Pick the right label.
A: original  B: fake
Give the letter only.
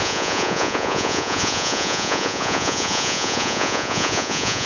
B